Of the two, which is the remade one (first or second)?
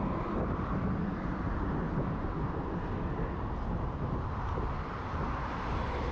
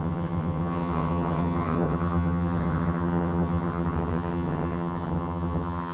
second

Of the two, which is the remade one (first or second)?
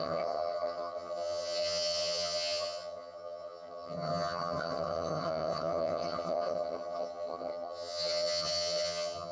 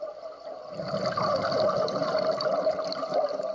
first